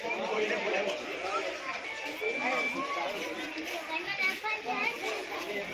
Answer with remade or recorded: recorded